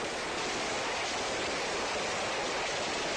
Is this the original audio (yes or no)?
yes